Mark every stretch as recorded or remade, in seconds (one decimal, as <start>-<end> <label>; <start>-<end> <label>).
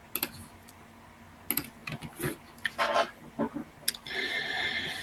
0.0-5.0 recorded